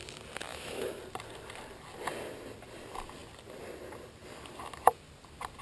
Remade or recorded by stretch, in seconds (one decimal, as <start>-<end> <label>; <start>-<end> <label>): 0.0-0.5 recorded; 0.5-1.0 remade; 1.0-5.6 recorded